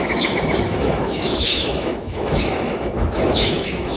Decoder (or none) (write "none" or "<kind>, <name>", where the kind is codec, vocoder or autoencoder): autoencoder, DAC-VAE